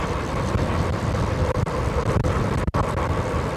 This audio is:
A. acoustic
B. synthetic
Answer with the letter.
B